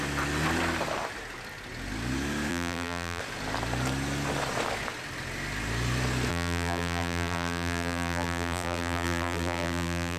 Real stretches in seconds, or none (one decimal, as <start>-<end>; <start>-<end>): 0.0-2.5; 3.2-6.3